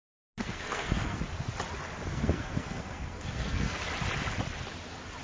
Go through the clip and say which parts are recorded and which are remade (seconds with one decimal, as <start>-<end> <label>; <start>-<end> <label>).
0.0-0.4 recorded; 0.4-1.2 remade; 1.2-2.1 recorded; 2.1-3.8 remade; 3.8-5.2 recorded